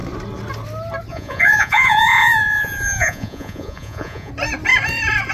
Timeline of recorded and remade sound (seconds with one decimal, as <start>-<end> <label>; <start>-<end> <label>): 0.0-1.1 recorded; 1.1-4.3 remade; 4.3-5.3 recorded